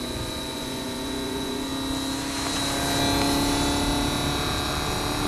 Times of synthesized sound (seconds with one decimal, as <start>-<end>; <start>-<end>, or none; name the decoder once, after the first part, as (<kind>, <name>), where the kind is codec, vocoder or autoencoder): 0.0-1.7 (vocoder, Vocos)